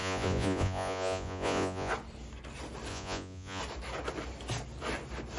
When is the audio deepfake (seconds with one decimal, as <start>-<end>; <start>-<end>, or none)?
0.0-1.9; 2.9-3.6